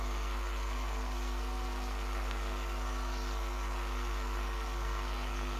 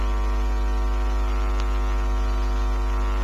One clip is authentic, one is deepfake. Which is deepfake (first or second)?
first